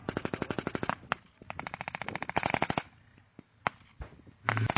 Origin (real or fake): real